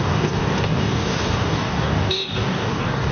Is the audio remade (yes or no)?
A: yes